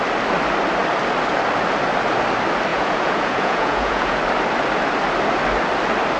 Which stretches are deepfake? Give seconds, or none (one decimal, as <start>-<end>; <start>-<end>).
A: 2.7-4.2